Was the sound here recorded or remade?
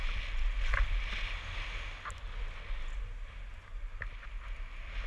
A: recorded